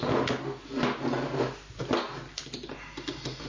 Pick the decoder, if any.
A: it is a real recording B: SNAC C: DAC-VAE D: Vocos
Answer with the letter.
A